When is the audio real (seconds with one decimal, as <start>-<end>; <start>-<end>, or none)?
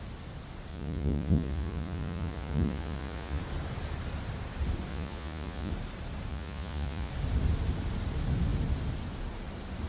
0.0-0.7; 3.4-4.9; 5.7-6.3; 7.1-9.9